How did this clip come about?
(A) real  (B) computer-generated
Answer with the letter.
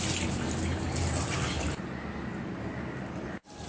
A